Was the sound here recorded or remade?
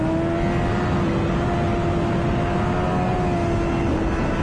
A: recorded